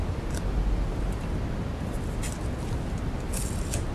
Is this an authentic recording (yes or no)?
yes